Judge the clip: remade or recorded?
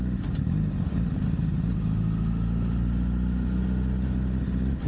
recorded